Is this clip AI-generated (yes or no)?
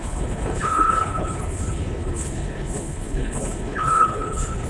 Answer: yes